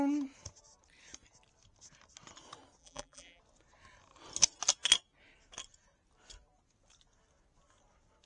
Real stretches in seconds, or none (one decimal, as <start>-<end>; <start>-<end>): 0.0-2.8; 3.4-8.3